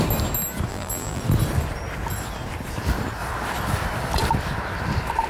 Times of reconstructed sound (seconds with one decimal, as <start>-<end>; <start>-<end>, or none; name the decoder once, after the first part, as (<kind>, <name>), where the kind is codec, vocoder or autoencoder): 0.7-1.2 (vocoder, BigVGAN v2)